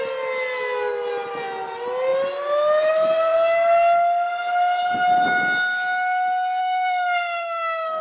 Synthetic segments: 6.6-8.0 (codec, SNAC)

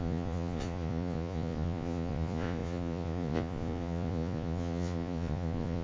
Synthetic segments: 0.0-5.8 (vocoder, Vocos)

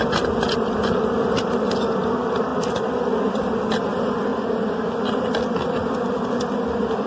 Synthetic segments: none